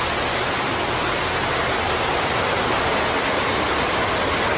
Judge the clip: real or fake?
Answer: real